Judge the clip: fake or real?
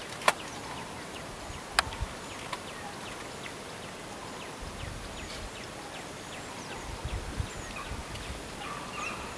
real